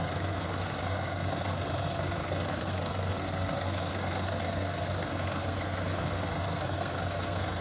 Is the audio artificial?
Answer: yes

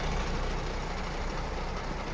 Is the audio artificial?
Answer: no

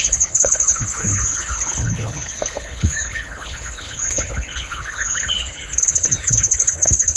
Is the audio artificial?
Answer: yes